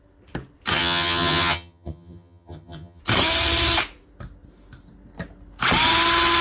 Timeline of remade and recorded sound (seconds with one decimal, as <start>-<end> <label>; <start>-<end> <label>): 0.0-0.7 recorded; 0.7-3.0 remade; 3.0-6.4 recorded